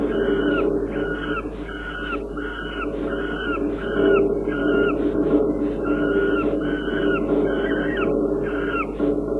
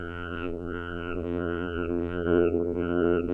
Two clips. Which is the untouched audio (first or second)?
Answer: first